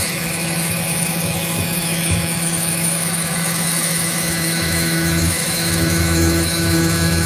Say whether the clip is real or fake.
fake